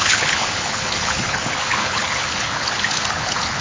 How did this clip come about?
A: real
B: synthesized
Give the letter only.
B